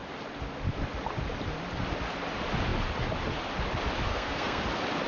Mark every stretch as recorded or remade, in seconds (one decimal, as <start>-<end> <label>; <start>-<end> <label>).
0.0-4.1 recorded; 4.1-4.6 remade; 4.6-5.1 recorded